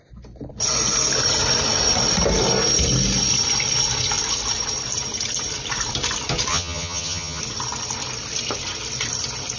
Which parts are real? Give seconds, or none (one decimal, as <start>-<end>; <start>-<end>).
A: 0.0-6.5; 7.4-9.6